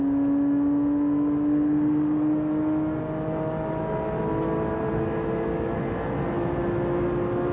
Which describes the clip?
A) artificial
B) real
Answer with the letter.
B